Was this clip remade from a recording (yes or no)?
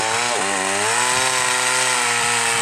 no